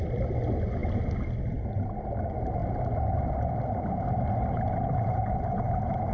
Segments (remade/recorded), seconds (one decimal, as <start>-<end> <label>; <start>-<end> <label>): 0.0-6.1 recorded